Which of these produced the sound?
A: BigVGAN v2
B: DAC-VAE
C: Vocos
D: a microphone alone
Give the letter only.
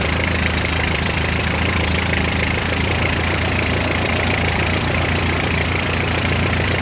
A